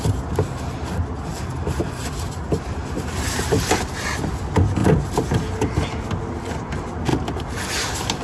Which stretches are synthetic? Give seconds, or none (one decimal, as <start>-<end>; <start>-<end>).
none